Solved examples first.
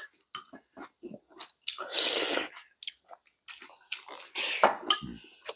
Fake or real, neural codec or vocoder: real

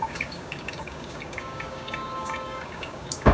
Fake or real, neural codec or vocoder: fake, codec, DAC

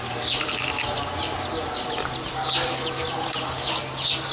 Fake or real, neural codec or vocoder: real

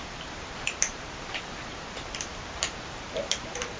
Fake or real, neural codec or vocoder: fake, vocoder, BigVGAN v2